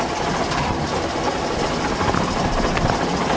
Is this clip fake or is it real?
real